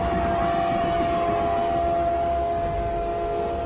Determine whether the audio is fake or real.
real